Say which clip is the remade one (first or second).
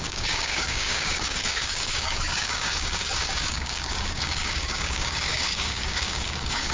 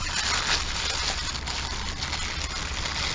first